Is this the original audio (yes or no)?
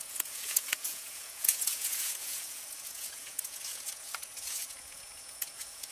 no